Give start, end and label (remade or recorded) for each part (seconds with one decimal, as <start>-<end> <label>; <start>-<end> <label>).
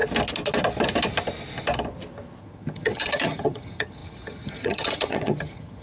0.0-2.4 recorded; 2.4-5.8 remade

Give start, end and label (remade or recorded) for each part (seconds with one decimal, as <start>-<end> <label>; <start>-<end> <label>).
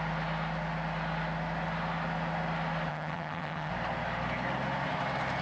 0.0-2.9 recorded; 2.9-3.7 remade; 3.7-5.4 recorded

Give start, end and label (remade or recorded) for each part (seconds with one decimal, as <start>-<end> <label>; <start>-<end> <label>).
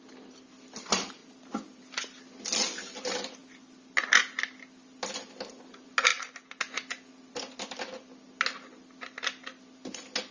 0.0-10.3 recorded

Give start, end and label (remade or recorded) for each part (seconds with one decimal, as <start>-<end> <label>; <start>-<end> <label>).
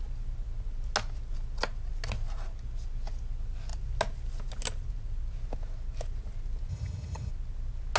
0.0-6.7 recorded; 6.7-7.3 remade; 7.3-8.0 recorded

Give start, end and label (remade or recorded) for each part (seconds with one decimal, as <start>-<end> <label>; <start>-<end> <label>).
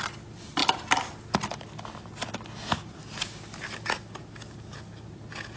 0.0-5.6 recorded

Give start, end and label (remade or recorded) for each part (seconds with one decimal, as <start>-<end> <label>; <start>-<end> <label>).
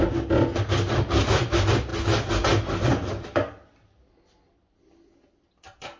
0.0-6.0 recorded